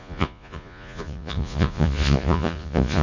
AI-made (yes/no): yes